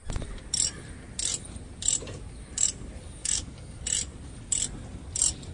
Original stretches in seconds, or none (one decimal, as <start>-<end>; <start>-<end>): 0.0-3.2; 3.8-5.5